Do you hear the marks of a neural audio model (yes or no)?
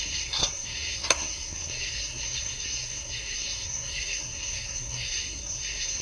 yes